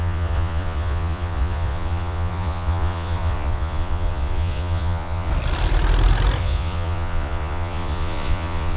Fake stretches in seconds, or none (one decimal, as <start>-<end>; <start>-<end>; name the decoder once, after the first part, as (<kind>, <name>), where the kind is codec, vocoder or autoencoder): 0.0-5.3 (vocoder, Vocos); 6.4-8.8